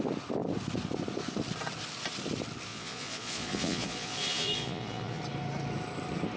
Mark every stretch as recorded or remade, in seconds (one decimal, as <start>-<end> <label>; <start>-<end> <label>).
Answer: 0.0-2.7 recorded; 2.7-5.2 remade; 5.2-6.4 recorded